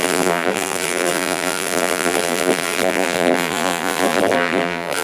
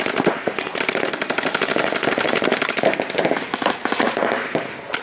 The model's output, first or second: first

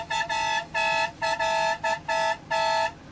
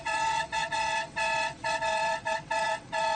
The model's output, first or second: second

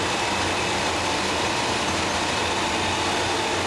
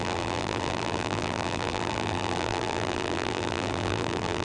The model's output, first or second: second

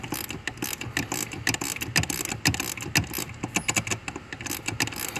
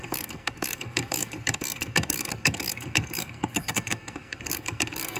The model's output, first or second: second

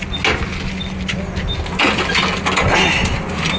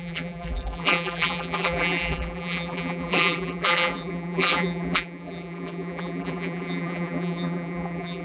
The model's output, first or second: second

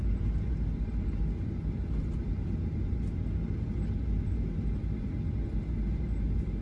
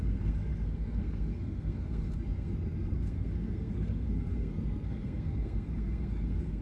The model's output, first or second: second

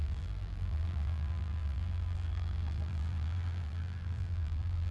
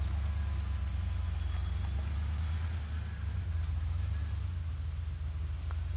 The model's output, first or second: first